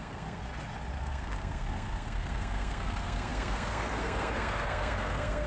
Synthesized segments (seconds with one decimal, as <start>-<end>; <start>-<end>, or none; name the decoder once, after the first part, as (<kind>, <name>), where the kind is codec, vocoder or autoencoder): 0.0-0.4 (codec, SNAC); 1.0-5.5